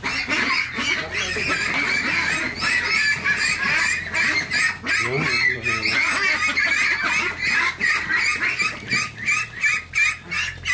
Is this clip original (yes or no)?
yes